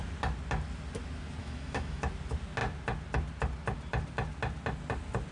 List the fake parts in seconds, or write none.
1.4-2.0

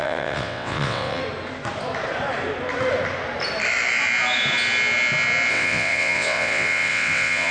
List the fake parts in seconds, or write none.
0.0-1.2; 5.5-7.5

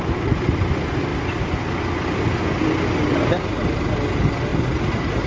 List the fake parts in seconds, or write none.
none

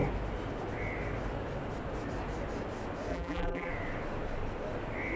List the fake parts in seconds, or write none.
3.1-3.7

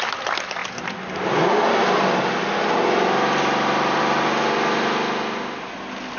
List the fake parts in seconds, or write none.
none

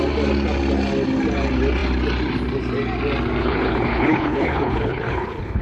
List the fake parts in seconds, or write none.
3.4-5.6